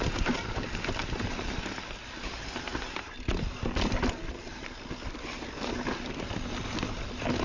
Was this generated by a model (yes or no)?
no